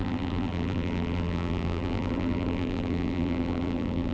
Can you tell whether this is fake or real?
fake